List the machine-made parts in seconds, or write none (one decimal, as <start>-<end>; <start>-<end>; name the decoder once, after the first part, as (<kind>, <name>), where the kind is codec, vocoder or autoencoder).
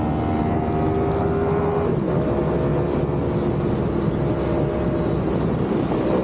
none